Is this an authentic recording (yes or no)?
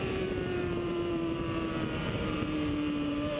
no